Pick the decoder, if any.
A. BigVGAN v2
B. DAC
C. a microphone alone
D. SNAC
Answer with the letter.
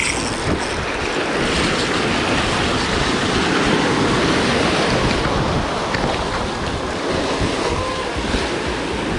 C